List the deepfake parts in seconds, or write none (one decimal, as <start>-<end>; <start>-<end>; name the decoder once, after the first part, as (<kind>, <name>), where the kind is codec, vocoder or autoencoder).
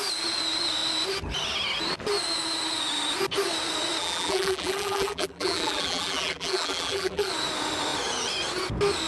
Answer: 4.0-7.3 (vocoder, BigVGAN v2)